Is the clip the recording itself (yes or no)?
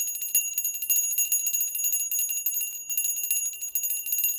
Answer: yes